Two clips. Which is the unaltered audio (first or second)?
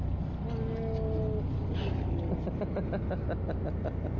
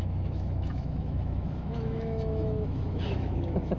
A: first